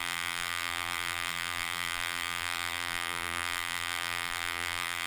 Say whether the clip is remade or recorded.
remade